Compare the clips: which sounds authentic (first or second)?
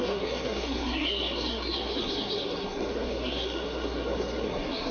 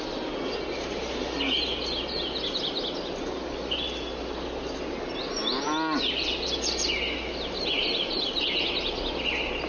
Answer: second